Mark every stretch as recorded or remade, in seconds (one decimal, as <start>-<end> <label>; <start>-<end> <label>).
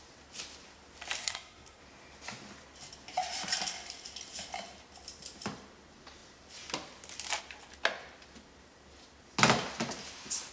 0.0-1.2 recorded; 1.2-1.8 remade; 1.8-10.5 recorded